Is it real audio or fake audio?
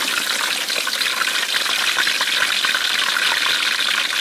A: real